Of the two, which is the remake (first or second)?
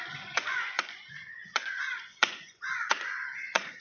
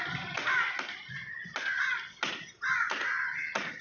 first